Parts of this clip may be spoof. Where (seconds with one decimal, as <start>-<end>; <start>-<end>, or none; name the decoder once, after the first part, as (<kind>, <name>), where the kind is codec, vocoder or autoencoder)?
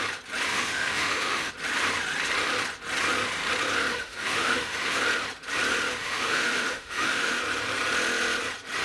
0.5-1.5 (autoencoder, DAC-VAE); 3.9-5.0; 6.0-7.3